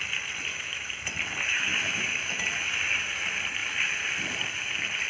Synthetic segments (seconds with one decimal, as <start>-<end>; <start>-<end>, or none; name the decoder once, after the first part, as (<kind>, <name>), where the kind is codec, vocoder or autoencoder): 0.5-1.0 (autoencoder, DAC-VAE); 1.5-2.4